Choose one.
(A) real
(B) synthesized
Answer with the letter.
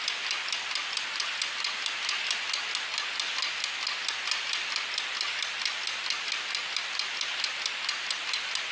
A